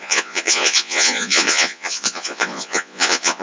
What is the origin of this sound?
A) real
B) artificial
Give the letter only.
B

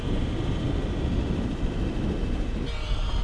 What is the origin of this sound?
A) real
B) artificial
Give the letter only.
A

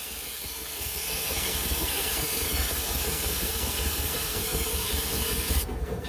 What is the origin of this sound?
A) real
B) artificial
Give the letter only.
B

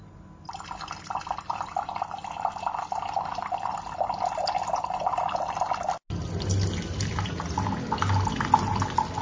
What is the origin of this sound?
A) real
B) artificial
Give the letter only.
A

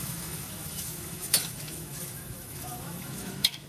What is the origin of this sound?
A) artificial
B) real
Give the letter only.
A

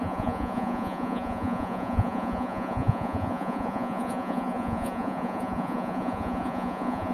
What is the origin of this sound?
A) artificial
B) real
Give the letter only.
A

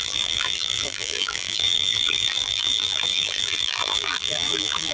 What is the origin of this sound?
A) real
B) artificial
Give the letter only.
B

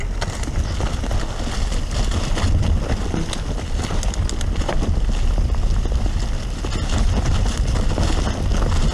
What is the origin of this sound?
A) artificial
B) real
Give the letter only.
B